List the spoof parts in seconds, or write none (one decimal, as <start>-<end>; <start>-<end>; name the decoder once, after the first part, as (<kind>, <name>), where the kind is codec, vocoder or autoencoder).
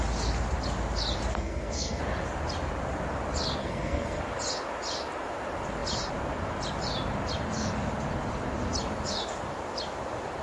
1.3-2.0 (codec, SNAC); 3.6-4.2